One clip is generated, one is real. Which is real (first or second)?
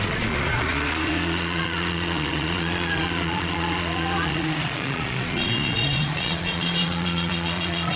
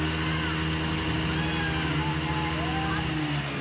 second